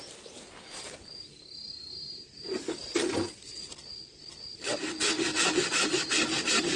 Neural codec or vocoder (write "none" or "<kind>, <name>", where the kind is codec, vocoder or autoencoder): none